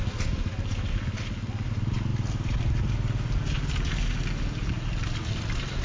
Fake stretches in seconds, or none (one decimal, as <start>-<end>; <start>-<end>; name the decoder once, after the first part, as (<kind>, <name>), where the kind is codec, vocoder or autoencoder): none